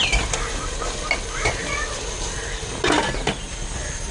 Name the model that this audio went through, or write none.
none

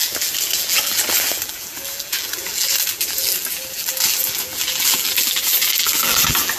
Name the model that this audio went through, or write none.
vocoder, BigVGAN v2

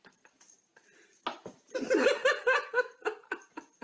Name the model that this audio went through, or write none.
none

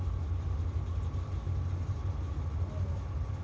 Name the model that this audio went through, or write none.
none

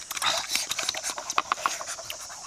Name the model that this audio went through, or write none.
none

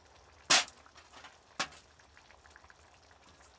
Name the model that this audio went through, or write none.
none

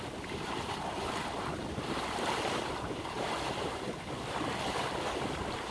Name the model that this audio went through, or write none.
vocoder, BigVGAN v2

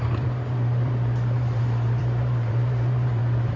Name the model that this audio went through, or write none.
vocoder, BigVGAN v2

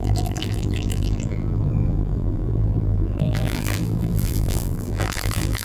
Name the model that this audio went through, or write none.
vocoder, BigVGAN v2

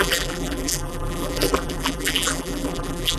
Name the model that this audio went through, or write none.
vocoder, BigVGAN v2